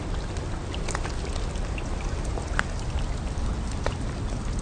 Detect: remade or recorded recorded